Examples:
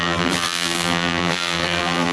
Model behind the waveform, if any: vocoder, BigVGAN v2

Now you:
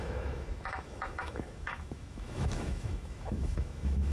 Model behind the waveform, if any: autoencoder, DAC-VAE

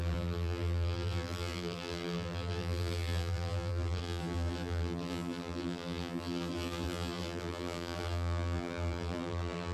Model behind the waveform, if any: vocoder, BigVGAN v2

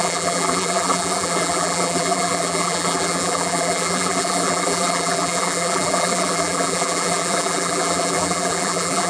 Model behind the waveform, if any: vocoder, BigVGAN v2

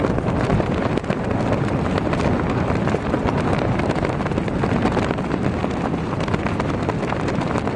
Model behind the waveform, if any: none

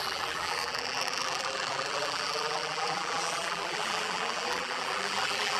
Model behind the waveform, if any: vocoder, BigVGAN v2